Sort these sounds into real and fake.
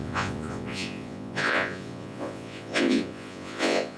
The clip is fake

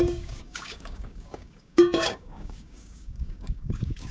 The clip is fake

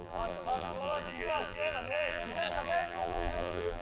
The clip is fake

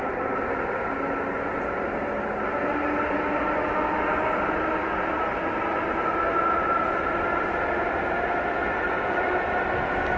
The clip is real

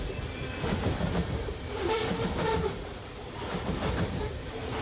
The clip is fake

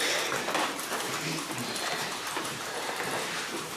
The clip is fake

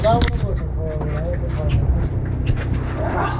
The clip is real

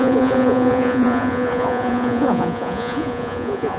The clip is fake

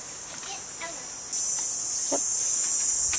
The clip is real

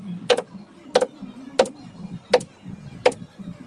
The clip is real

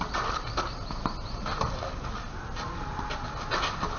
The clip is real